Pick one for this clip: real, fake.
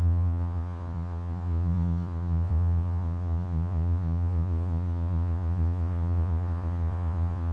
fake